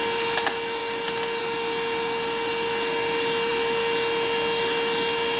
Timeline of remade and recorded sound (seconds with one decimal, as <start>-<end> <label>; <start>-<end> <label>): 0.0-5.4 recorded